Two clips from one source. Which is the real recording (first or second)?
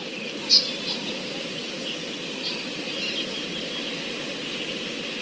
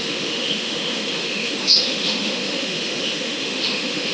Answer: first